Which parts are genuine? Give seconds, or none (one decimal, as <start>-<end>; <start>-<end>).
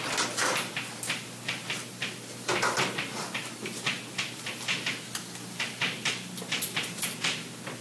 0.0-7.8